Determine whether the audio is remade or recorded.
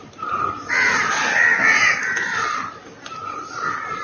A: recorded